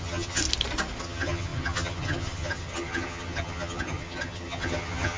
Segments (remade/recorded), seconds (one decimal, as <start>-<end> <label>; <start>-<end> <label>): 0.0-0.4 remade; 0.4-1.0 recorded; 1.0-5.2 remade